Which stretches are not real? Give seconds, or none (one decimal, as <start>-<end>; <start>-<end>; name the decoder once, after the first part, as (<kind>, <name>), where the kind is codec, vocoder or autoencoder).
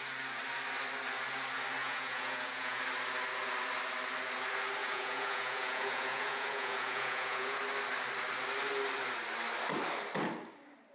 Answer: 1.8-2.8 (vocoder, Vocos); 4.8-7.6